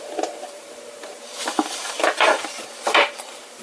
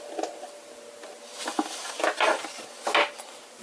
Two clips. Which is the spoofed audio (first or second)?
first